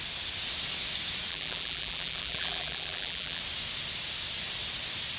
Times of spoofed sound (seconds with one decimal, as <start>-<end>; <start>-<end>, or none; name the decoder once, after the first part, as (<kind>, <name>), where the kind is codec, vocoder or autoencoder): 1.3-3.4 (vocoder, BigVGAN v2)